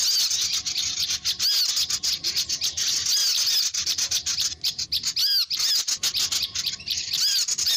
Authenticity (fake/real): real